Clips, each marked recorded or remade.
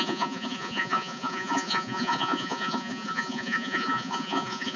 remade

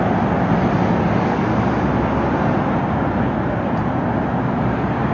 recorded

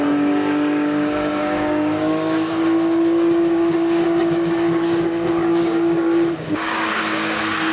remade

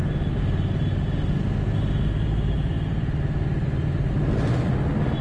recorded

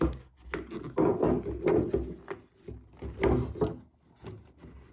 recorded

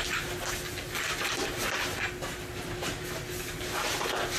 recorded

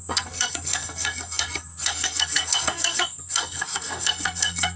remade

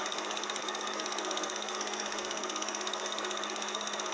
remade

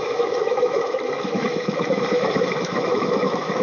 remade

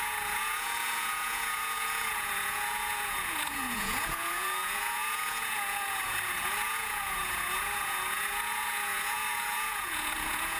remade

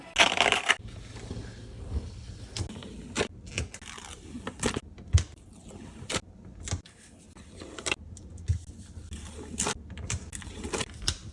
recorded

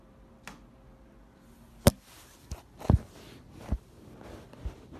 recorded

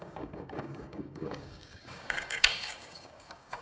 remade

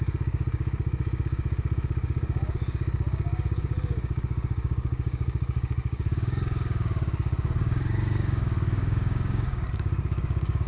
remade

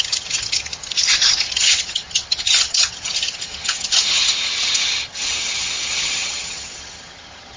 remade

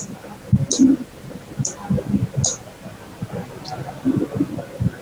recorded